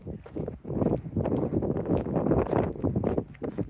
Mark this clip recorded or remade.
recorded